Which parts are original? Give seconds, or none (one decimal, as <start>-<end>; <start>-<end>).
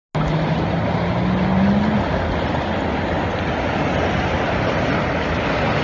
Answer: 0.0-5.8